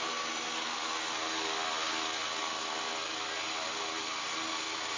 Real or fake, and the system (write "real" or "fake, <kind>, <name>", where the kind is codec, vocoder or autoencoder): real